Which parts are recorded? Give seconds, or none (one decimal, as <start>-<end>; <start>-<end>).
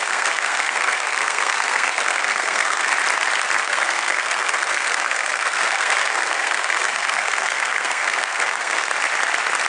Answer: 2.9-3.6; 8.9-9.7